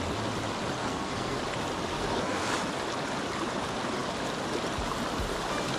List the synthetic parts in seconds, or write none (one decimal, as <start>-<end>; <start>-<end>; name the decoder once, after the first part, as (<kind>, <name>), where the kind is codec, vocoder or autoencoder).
0.8-1.4 (codec, SNAC); 1.9-2.5